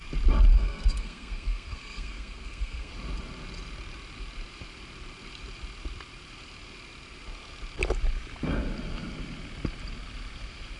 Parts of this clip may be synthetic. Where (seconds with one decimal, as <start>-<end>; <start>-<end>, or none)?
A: 0.5-2.9